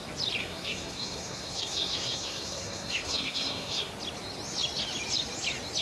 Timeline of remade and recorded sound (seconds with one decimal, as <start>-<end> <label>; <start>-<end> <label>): 0.0-0.4 recorded; 0.4-3.9 remade; 3.9-5.8 recorded